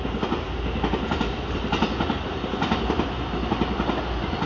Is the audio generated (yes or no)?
no